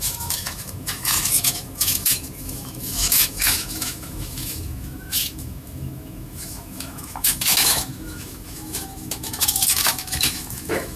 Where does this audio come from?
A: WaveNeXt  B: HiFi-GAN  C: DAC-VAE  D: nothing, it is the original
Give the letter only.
C